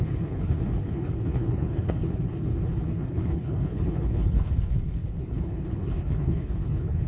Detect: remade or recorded remade